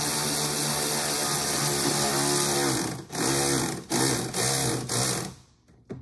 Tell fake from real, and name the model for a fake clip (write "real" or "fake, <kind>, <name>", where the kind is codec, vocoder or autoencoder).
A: real